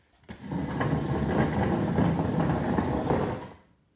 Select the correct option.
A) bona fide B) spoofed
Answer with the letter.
A